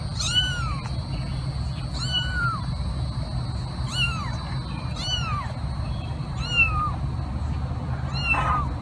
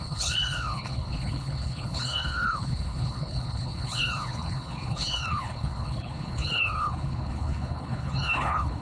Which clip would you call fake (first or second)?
second